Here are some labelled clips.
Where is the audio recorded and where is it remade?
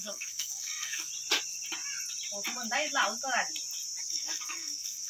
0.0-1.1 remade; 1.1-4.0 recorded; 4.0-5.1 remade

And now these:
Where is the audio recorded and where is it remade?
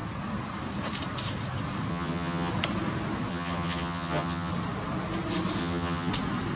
0.0-1.9 recorded; 1.9-2.5 remade; 2.5-3.3 recorded; 3.3-4.5 remade; 4.5-5.6 recorded; 5.6-6.1 remade; 6.1-6.6 recorded